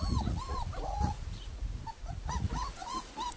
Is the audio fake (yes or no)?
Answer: yes